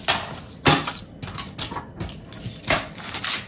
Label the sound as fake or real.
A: real